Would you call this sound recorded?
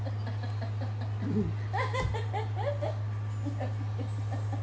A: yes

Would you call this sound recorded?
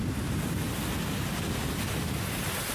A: yes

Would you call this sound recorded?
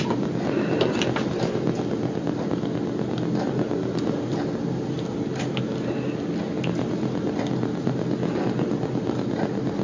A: yes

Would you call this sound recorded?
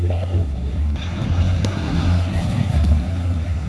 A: no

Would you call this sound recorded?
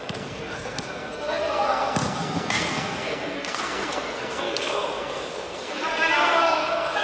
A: no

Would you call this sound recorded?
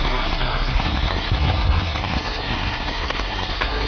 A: no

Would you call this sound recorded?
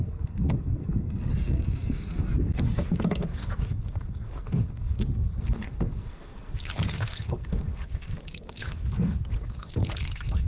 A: no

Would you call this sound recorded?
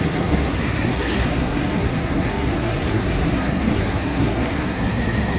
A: no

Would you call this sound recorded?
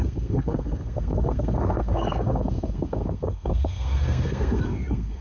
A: no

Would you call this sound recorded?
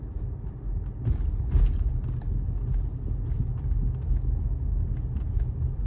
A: yes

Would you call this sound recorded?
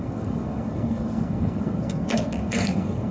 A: no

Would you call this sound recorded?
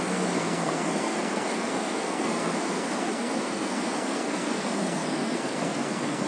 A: no